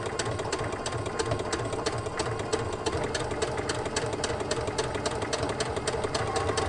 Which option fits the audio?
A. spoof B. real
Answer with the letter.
B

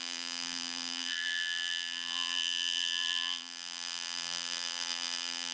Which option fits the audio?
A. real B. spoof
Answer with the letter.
B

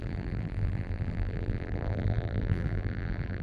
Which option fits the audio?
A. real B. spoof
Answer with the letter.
B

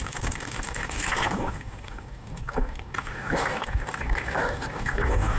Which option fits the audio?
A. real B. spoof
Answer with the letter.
B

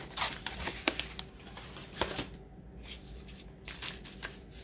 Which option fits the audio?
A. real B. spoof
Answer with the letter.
A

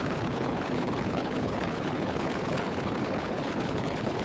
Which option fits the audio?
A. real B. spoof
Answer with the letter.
B